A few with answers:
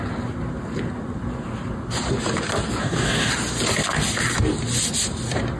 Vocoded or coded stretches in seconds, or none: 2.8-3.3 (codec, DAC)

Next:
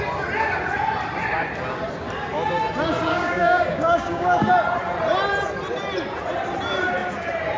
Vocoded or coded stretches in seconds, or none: 3.1-4.5 (codec, DAC)

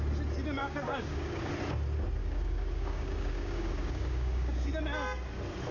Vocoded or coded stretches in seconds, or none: 0.6-1.5 (codec, DAC); 2.2-4.7

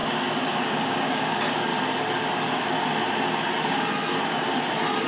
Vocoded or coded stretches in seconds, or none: 0.6-1.7 (codec, DAC)

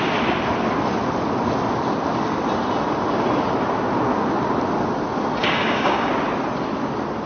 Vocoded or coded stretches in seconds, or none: 5.4-6.1 (codec, DAC)

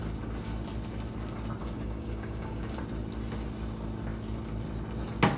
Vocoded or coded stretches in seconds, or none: 1.6-2.8 (codec, DAC)